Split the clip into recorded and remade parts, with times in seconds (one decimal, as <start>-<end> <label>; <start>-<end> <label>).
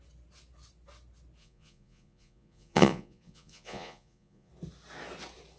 0.0-1.4 recorded; 1.4-4.5 remade; 4.5-5.6 recorded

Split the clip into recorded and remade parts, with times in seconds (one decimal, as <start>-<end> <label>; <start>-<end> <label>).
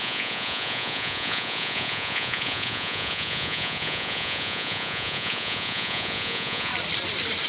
0.0-6.7 remade; 6.7-7.5 recorded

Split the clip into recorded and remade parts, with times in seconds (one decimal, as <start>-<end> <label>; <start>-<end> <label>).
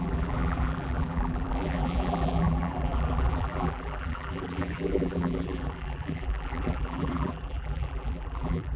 0.0-8.8 remade